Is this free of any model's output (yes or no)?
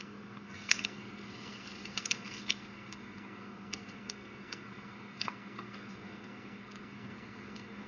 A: no